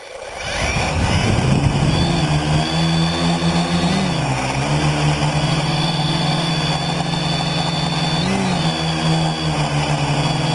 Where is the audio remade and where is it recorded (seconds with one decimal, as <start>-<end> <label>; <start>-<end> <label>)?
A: 0.0-5.5 recorded; 5.5-6.5 remade; 6.5-10.5 recorded